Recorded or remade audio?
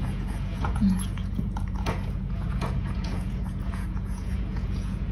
remade